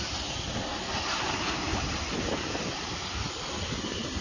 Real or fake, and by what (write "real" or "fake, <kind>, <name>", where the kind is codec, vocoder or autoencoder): real